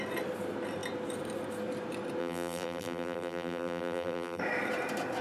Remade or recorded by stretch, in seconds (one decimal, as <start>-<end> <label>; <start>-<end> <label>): 0.0-2.2 recorded; 2.2-4.4 remade; 4.4-5.2 recorded